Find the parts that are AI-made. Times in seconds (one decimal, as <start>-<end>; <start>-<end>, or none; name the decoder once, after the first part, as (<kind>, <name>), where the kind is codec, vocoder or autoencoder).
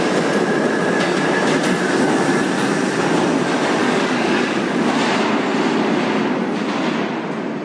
3.8-4.9 (codec, DAC)